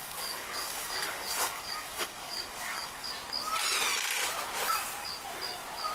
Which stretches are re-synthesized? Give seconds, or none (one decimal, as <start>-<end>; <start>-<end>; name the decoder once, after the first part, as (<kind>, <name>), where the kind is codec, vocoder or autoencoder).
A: 0.0-3.1 (codec, DAC)